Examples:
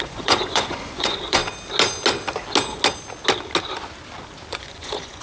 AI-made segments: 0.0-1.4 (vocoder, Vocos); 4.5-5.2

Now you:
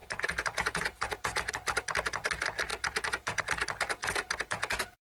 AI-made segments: 0.0-1.5 (vocoder, Vocos); 2.7-3.4; 4.0-5.0

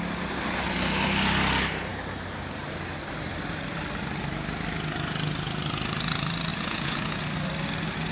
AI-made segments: 6.5-7.2 (vocoder, Vocos)

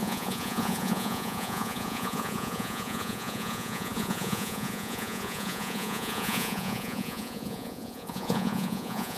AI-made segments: 0.0-9.2 (vocoder, Vocos)

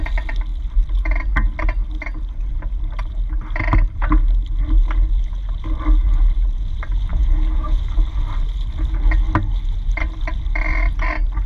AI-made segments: 7.1-7.8 (vocoder, Vocos)

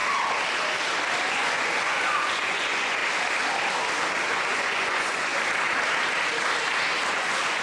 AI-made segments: 1.3-3.0 (vocoder, Vocos); 4.3-5.3; 7.1-7.6

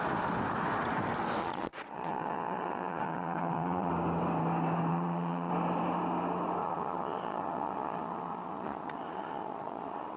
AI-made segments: 1.4-3.9 (vocoder, Vocos); 4.9-5.5; 6.6-10.2